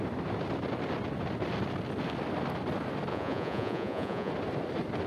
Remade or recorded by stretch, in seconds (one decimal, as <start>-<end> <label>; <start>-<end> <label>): 0.0-3.1 recorded; 3.1-4.3 remade; 4.3-5.1 recorded

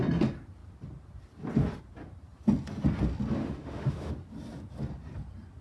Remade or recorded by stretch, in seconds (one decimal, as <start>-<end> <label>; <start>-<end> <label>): 0.0-3.4 recorded; 3.4-4.1 remade; 4.1-5.6 recorded

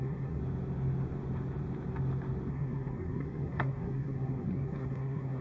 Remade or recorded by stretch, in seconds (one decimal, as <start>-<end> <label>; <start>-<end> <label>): 0.0-0.4 remade; 0.4-2.5 recorded; 2.5-5.4 remade

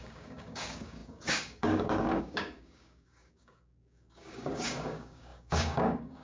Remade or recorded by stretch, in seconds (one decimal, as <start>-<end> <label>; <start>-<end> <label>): 0.0-6.2 remade

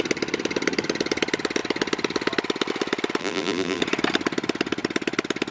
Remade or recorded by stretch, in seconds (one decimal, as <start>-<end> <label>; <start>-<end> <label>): 0.0-3.2 recorded; 3.2-3.8 remade; 3.8-5.5 recorded

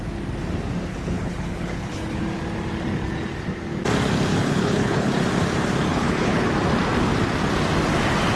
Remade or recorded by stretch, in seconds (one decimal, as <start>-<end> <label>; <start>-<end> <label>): 0.0-0.9 recorded; 0.9-2.2 remade; 2.2-4.3 recorded; 4.3-5.1 remade; 5.1-5.9 recorded; 5.9-6.5 remade; 6.5-8.4 recorded

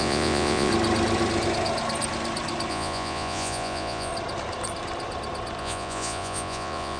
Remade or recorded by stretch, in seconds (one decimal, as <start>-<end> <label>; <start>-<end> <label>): 0.0-0.7 remade; 0.7-2.7 recorded; 2.7-4.1 remade; 4.1-5.6 recorded; 5.6-7.0 remade